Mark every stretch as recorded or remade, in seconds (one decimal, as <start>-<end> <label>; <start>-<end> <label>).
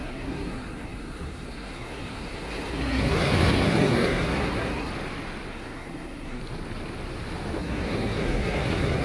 0.0-4.9 remade; 4.9-5.5 recorded; 5.5-6.4 remade; 6.4-7.6 recorded; 7.6-9.0 remade